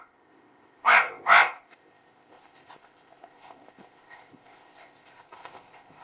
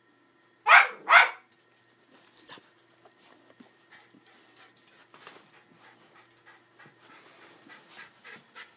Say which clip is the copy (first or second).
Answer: first